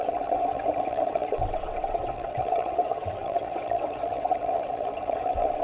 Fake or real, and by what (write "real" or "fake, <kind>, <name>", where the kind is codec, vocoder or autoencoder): fake, vocoder, WaveNeXt